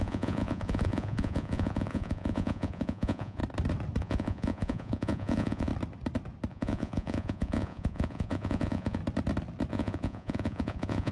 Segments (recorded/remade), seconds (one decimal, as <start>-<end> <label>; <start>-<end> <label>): 0.0-3.4 remade; 3.4-4.0 recorded; 4.0-5.7 remade; 5.7-6.5 recorded; 6.5-9.0 remade; 9.0-9.7 recorded; 9.7-11.1 remade